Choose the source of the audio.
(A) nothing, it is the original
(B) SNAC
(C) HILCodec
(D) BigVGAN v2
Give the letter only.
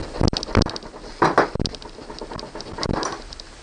A